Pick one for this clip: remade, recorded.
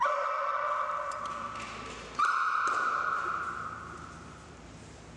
recorded